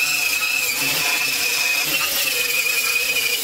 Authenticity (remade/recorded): recorded